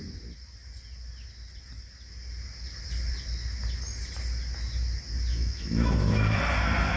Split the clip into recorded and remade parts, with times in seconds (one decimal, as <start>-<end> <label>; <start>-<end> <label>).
0.0-5.3 recorded; 5.3-6.4 remade; 6.4-7.0 recorded